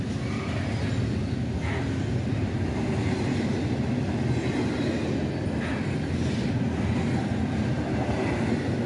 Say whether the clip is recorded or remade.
recorded